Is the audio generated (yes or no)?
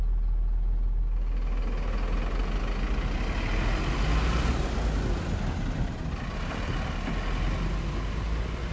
no